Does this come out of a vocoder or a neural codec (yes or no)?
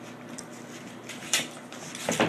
no